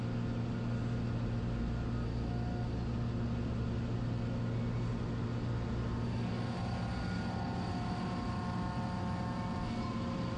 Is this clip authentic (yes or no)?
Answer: yes